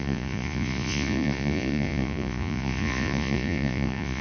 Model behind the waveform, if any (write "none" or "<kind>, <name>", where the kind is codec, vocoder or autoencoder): vocoder, Vocos